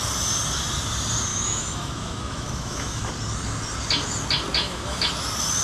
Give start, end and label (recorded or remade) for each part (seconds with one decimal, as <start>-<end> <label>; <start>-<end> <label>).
0.0-1.3 recorded; 1.3-3.1 remade; 3.1-4.6 recorded; 4.6-5.1 remade; 5.1-5.6 recorded

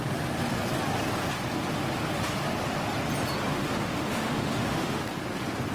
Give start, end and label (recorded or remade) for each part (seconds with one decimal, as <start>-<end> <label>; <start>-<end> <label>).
0.0-3.5 recorded; 3.5-5.0 remade; 5.0-5.7 recorded

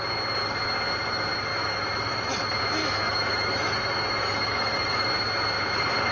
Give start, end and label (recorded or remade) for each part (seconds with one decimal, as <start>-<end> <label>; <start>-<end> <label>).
0.0-1.5 recorded; 1.5-2.3 remade; 2.3-2.8 recorded; 2.8-5.1 remade; 5.1-6.1 recorded

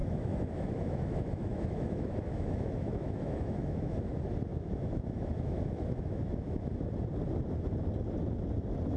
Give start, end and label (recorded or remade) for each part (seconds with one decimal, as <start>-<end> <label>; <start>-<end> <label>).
0.0-4.1 remade; 4.1-4.5 recorded; 4.5-6.7 remade; 6.7-9.0 recorded

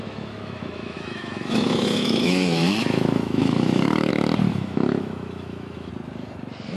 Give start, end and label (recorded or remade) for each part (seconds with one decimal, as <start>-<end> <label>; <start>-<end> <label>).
0.0-4.1 remade; 4.1-4.5 recorded; 4.5-5.9 remade; 5.9-6.8 recorded

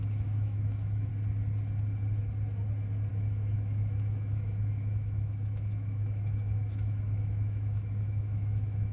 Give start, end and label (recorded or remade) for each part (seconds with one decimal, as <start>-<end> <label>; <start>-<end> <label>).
0.0-1.1 remade; 1.1-3.1 recorded; 3.1-8.9 remade

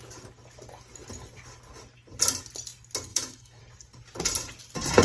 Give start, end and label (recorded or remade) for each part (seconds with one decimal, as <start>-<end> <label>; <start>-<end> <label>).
0.0-3.1 recorded; 3.1-3.6 remade; 3.6-5.0 recorded